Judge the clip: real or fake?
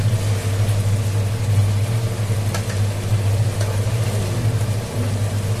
real